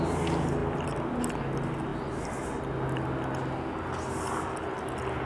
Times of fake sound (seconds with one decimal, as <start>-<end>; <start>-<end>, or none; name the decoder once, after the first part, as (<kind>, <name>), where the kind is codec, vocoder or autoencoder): none